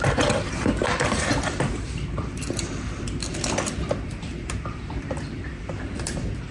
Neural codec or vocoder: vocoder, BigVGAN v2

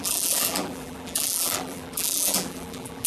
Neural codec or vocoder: vocoder, BigVGAN v2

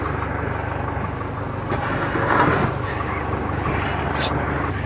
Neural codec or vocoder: none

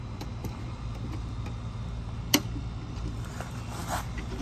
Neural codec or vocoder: vocoder, BigVGAN v2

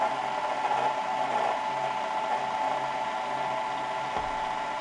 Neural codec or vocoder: none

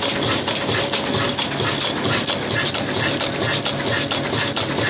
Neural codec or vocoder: none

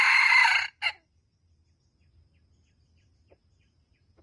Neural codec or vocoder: none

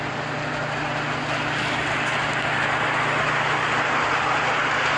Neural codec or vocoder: none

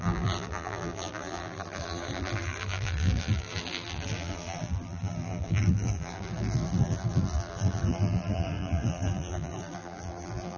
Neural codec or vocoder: vocoder, BigVGAN v2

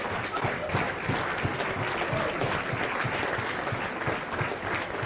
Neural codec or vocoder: none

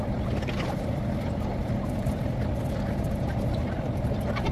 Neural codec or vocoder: vocoder, BigVGAN v2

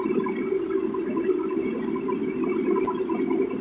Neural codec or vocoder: none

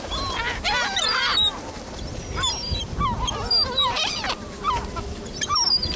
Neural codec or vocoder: vocoder, BigVGAN v2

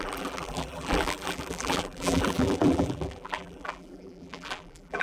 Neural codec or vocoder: vocoder, BigVGAN v2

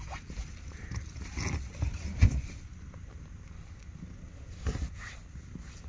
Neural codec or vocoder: none